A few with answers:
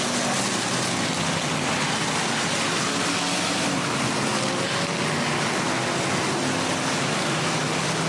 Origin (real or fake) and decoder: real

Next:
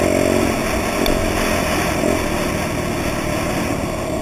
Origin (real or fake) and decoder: real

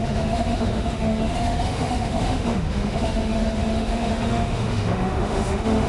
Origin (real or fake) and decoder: fake, autoencoder, DAC-VAE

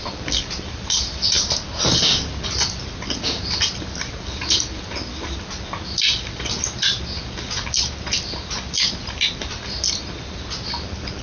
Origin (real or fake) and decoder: real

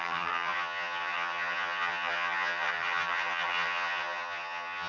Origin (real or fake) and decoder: fake, vocoder, HiFi-GAN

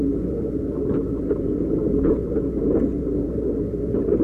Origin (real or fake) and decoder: real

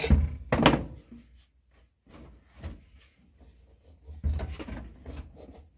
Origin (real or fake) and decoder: real